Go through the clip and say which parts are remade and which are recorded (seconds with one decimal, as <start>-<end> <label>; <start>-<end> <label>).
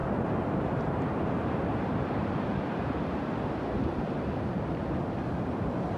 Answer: 0.0-1.5 remade; 1.5-6.0 recorded